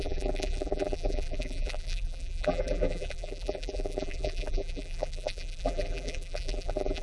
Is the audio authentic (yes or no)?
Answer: no